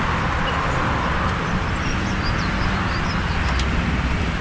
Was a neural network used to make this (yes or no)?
no